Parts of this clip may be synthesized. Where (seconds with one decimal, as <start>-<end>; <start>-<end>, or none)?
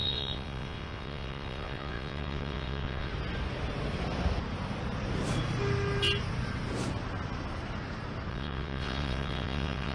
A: 0.0-3.1; 8.3-9.9